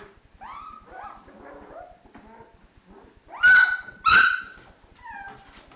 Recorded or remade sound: recorded